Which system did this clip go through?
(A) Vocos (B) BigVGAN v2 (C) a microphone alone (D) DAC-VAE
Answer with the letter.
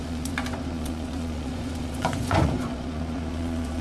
A